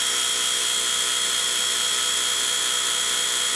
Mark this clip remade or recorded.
recorded